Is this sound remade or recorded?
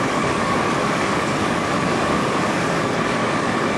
remade